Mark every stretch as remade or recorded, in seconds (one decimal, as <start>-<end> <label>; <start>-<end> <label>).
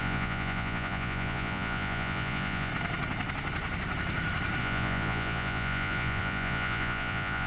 0.0-2.7 remade; 2.7-4.6 recorded; 4.6-7.5 remade